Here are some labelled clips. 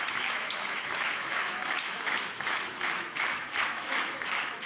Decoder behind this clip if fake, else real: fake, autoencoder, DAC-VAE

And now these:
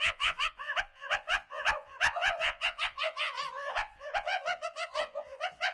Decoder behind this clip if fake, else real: fake, vocoder, Vocos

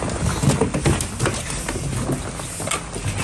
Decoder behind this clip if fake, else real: real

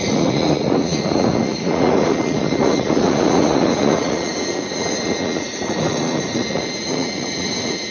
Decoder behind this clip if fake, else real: fake, vocoder, Vocos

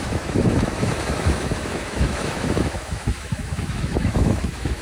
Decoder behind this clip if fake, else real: fake, autoencoder, DAC-VAE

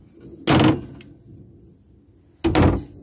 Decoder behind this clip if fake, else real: real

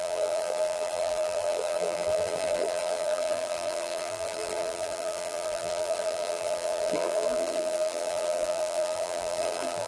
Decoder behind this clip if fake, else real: fake, vocoder, BigVGAN v2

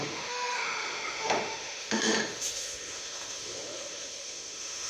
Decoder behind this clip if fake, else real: fake, autoencoder, DAC-VAE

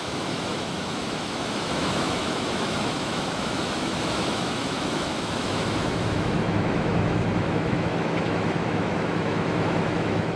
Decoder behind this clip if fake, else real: fake, autoencoder, DAC-VAE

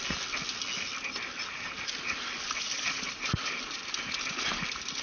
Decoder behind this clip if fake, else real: real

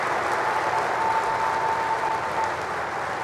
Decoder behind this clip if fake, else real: real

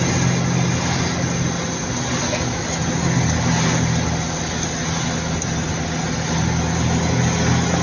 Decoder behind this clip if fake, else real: real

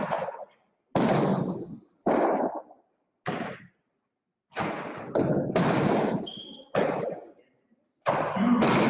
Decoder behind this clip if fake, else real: real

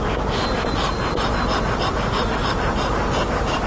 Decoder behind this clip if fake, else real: real